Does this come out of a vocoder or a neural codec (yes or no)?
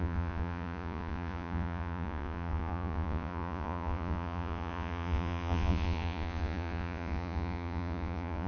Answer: yes